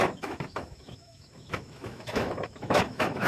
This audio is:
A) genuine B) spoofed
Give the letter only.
B